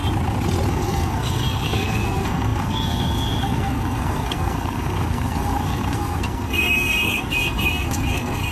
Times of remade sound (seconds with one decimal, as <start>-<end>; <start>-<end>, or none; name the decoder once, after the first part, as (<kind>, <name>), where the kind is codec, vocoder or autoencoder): 0.7-8.5 (codec, SNAC)